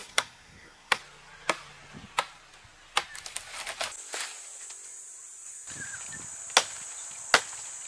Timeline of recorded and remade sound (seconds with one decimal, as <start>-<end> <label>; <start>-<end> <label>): 0.0-1.0 remade; 1.0-7.9 recorded